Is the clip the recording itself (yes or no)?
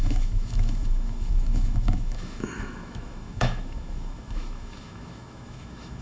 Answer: no